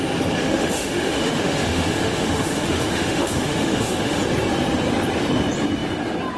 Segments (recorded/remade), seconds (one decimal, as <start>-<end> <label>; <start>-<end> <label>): 0.0-0.4 recorded; 0.4-4.2 remade; 4.2-6.4 recorded